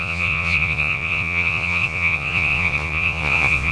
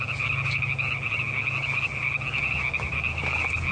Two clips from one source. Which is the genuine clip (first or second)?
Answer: second